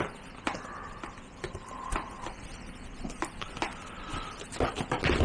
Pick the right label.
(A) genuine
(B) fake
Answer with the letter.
A